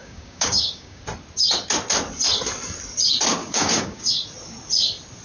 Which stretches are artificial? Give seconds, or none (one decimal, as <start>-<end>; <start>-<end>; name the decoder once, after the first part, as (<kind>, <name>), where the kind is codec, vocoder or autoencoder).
0.0-1.0 (codec, DAC); 3.4-4.1